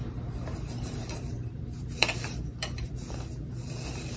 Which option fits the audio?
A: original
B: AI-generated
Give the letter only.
B